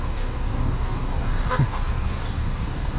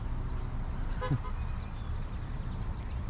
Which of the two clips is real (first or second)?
second